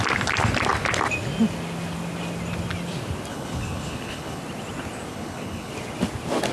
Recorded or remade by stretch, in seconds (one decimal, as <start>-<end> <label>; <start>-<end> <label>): 0.0-3.3 recorded; 3.3-4.4 remade; 4.4-5.1 recorded; 5.1-5.7 remade; 5.7-6.5 recorded